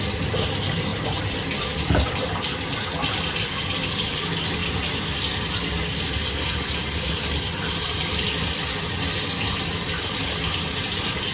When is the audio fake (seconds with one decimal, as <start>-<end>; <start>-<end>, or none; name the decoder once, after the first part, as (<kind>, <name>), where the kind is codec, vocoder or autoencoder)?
none